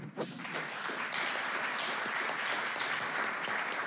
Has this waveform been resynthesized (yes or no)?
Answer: no